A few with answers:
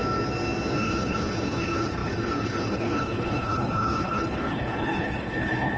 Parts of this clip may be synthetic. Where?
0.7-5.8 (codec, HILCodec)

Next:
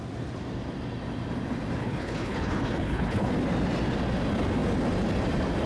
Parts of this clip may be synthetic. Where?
1.8-3.3 (codec, HILCodec)

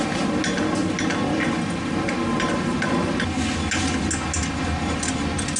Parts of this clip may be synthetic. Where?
none

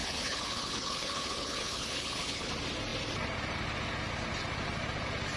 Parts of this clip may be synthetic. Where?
0.0-2.5 (codec, HILCodec)

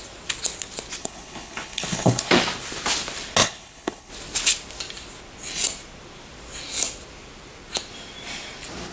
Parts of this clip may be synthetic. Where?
1.0-2.3 (codec, HILCodec); 3.4-4.1

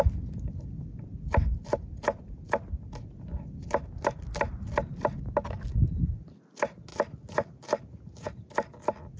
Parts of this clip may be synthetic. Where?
none

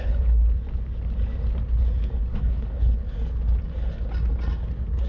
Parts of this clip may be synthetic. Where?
0.0-0.4 (codec, HILCodec); 2.3-3.0

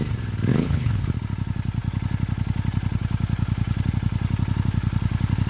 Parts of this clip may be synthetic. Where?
0.5-1.0 (codec, HILCodec)